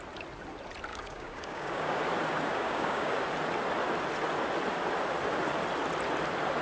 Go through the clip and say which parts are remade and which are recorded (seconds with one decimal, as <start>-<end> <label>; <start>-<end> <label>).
0.0-0.9 recorded; 0.9-2.0 remade; 2.0-2.5 recorded; 2.5-3.2 remade; 3.2-6.6 recorded